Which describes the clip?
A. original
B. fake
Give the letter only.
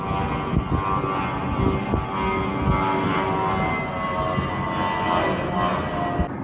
A